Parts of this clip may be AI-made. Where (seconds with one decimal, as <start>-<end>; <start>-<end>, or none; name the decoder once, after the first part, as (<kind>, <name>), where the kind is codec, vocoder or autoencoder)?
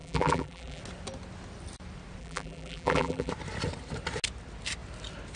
0.0-0.8 (vocoder, BigVGAN v2); 2.2-3.3